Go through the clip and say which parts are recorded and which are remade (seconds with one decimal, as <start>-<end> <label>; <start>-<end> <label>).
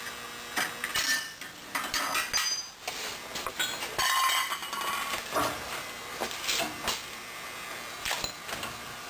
0.0-0.9 recorded; 0.9-2.0 remade; 2.0-9.1 recorded